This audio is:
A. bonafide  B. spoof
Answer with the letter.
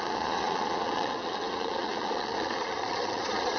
B